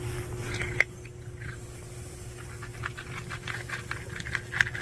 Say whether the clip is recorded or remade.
recorded